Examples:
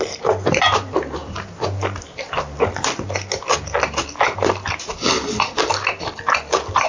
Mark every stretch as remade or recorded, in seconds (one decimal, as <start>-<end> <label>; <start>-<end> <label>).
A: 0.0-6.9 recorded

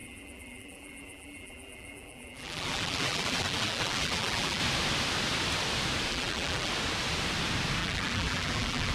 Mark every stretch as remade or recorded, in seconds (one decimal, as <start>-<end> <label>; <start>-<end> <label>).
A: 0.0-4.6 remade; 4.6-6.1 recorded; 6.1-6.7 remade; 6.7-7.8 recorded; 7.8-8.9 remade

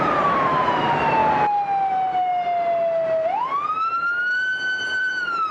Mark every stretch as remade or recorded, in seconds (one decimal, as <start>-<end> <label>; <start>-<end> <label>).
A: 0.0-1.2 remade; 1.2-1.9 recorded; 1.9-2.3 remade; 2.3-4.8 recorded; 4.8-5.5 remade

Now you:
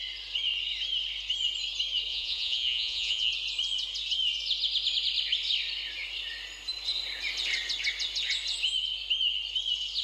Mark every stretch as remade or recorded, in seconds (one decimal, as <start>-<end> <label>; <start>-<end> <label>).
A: 0.0-2.1 recorded; 2.1-3.3 remade; 3.3-10.0 recorded